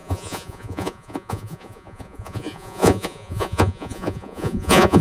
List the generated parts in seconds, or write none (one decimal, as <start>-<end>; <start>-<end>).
0.0-5.0